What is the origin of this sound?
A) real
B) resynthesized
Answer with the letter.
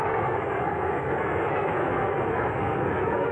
B